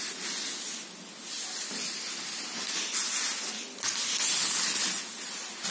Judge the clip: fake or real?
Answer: real